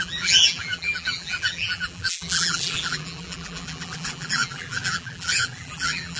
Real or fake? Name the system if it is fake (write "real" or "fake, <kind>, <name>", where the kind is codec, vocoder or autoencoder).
fake, vocoder, BigVGAN v2